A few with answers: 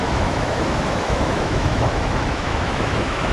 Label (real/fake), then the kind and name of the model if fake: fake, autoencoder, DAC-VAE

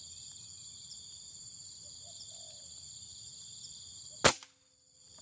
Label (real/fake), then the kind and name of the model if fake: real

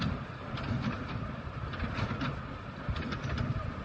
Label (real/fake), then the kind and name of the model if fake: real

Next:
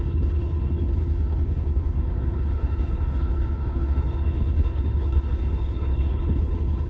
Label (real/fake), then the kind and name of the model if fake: fake, codec, HILCodec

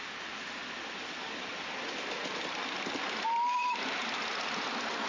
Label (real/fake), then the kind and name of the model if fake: real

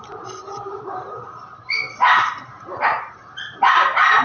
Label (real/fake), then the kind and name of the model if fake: fake, vocoder, BigVGAN v2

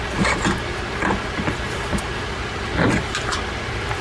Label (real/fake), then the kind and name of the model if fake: real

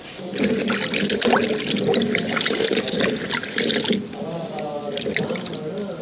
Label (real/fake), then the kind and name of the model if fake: real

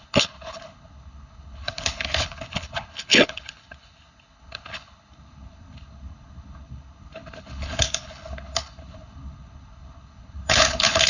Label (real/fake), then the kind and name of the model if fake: fake, codec, HILCodec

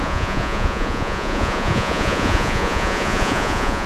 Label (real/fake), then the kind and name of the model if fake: fake, vocoder, Vocos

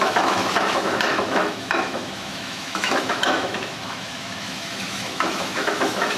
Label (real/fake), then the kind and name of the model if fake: fake, autoencoder, DAC-VAE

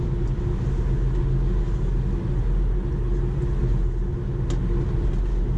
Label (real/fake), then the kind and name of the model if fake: real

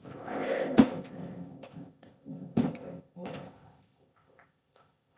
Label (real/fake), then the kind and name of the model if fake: fake, codec, ZipCodec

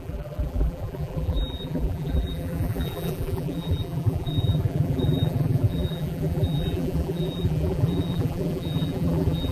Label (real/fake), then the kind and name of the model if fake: fake, vocoder, BigVGAN v2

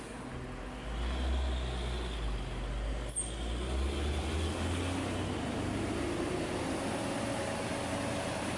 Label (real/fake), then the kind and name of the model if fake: real